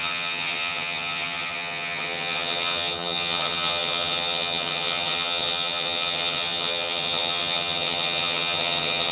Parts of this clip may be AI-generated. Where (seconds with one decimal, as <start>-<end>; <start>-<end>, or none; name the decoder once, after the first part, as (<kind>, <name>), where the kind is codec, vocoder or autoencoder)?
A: 0.0-9.1 (vocoder, HiFi-GAN)